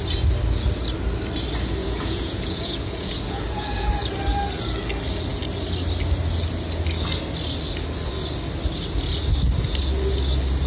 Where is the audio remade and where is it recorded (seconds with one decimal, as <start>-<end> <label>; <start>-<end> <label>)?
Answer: 0.0-1.8 recorded; 1.8-3.9 remade; 3.9-10.7 recorded